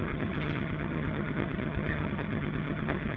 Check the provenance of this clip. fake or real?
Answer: fake